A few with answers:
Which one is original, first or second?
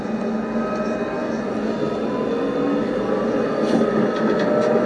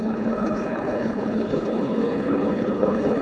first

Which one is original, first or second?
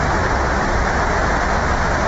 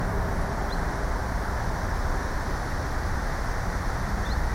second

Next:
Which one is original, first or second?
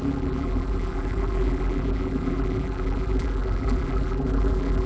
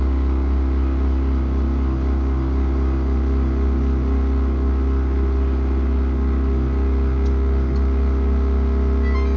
second